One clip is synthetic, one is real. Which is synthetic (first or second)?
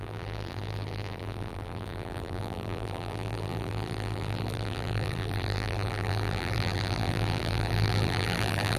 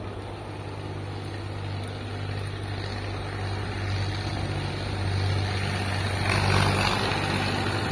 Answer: first